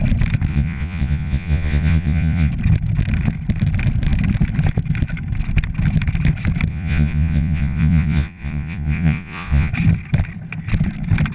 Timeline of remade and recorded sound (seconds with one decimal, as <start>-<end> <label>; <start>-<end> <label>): 0.0-0.5 recorded; 0.5-2.5 remade; 2.5-6.7 recorded; 6.7-9.7 remade; 9.7-11.3 recorded